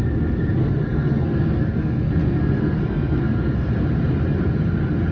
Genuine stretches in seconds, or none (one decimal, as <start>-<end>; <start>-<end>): 0.0-0.6; 3.7-5.1